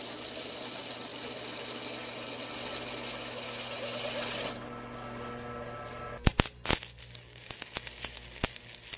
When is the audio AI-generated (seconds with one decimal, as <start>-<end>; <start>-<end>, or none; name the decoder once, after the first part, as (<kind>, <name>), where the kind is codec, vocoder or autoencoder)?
none